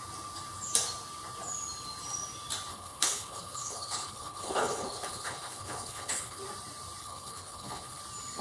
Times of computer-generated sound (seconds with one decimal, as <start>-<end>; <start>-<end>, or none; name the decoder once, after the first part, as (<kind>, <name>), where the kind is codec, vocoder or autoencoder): 2.7-6.4 (codec, HILCodec); 7.0-8.0